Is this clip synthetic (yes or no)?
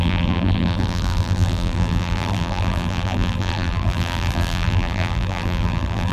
yes